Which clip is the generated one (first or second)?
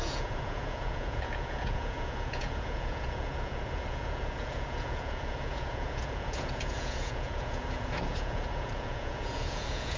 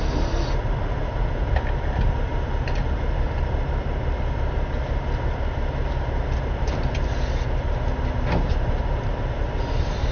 first